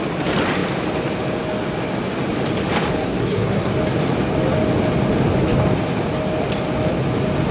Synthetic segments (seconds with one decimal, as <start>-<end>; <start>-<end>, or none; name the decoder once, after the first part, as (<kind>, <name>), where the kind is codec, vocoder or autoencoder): 3.0-3.7 (codec, SNAC)